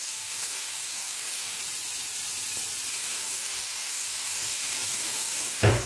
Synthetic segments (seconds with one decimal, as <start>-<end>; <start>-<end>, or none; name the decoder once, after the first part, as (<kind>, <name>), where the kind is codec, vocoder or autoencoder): 0.0-1.6 (codec, DAC); 2.9-5.9